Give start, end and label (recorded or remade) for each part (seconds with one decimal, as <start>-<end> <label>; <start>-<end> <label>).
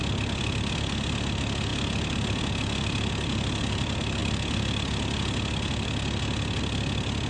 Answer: 0.0-7.3 recorded